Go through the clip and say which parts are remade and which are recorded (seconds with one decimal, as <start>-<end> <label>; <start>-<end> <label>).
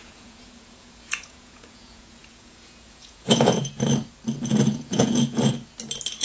0.0-3.7 remade; 3.7-4.5 recorded; 4.5-5.5 remade; 5.5-6.2 recorded